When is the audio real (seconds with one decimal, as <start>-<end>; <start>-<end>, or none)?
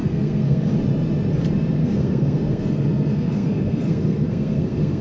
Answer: 0.7-1.8